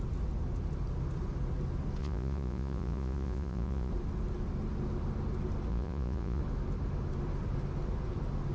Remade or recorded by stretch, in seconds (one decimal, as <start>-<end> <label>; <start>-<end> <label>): 0.0-2.0 recorded; 2.0-3.9 remade; 3.9-5.7 recorded; 5.7-6.4 remade; 6.4-8.5 recorded